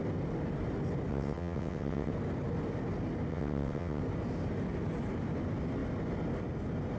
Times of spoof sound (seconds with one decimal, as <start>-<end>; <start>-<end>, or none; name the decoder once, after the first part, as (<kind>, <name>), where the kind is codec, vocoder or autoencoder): 1.1-2.1 (vocoder, WaveNeXt); 3.3-4.0

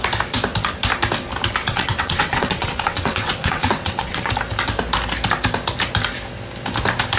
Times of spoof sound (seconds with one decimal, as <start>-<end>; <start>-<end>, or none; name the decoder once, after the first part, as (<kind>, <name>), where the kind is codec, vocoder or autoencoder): 1.6-4.3 (vocoder, WaveNeXt)

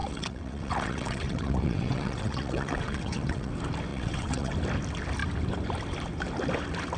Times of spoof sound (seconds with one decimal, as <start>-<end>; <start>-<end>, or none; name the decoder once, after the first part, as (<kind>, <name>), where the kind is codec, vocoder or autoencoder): 0.0-3.5 (vocoder, WaveNeXt); 3.9-4.5

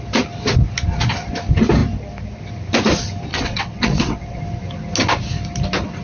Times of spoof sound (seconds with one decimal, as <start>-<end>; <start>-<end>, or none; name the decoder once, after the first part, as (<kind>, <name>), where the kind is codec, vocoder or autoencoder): 3.3-4.4 (vocoder, WaveNeXt)